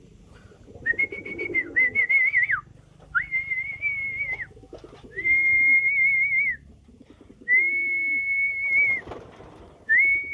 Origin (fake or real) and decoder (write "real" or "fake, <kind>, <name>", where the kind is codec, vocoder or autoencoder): real